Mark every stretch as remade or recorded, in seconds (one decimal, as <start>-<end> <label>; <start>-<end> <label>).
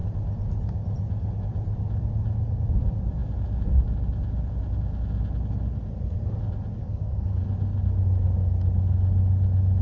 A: 0.0-6.8 recorded; 6.8-7.4 remade; 7.4-9.8 recorded